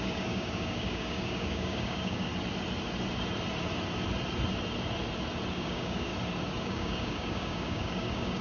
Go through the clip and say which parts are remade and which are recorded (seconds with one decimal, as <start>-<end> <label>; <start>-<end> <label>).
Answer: 0.0-2.3 remade; 2.3-5.5 recorded; 5.5-6.1 remade; 6.1-6.6 recorded; 6.6-8.4 remade